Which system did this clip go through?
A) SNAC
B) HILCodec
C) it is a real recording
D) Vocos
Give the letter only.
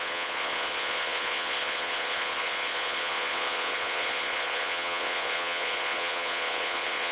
D